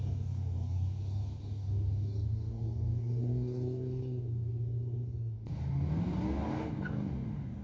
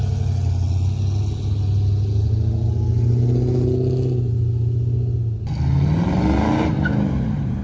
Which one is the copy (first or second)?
first